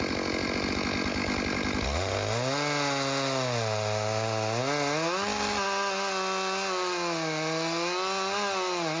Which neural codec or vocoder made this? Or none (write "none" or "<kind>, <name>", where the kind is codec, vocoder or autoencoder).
none